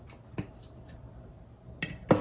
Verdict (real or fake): real